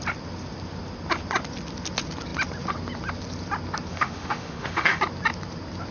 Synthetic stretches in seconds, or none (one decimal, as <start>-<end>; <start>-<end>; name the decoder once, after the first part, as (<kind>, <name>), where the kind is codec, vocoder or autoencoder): 3.9-5.0 (autoencoder, DAC-VAE)